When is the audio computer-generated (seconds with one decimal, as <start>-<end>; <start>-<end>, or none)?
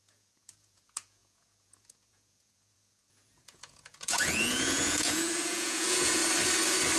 0.0-6.2